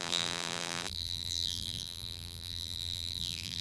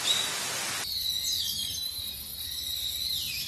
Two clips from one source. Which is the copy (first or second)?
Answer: first